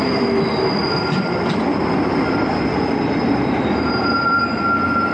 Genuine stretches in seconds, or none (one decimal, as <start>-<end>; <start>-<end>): 0.0-1.7; 4.6-5.1